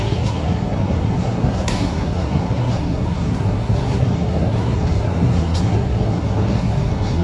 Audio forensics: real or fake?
fake